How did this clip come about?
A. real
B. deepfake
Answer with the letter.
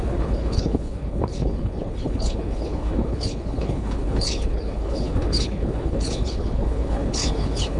B